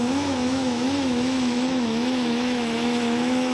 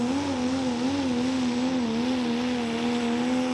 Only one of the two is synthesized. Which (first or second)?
first